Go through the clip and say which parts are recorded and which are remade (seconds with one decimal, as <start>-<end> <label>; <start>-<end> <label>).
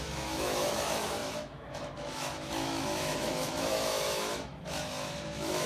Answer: 0.0-5.7 remade